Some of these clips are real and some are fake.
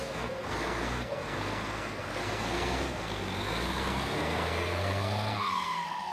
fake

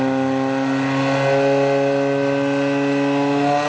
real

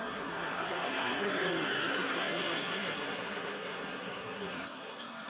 fake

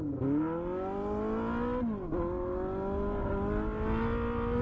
real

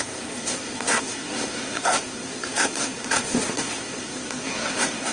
fake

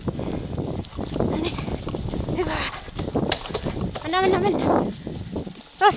real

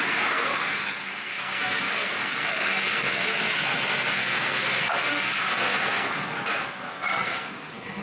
fake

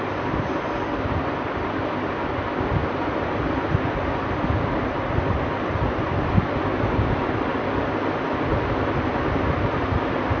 real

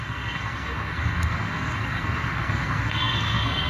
fake